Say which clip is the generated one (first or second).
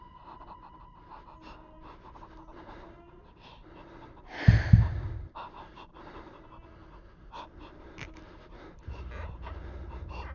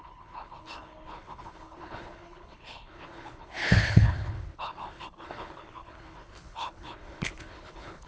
second